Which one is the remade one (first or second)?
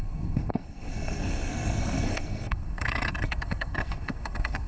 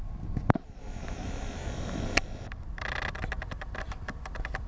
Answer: first